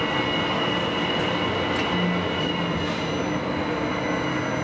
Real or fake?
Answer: real